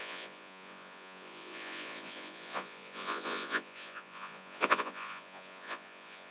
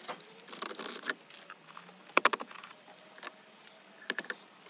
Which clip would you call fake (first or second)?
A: first